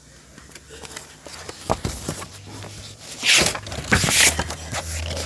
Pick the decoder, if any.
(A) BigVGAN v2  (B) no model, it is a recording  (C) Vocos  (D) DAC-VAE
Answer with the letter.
B